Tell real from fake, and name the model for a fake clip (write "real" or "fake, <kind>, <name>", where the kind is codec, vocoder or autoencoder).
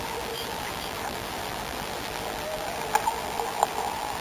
fake, vocoder, BigVGAN v2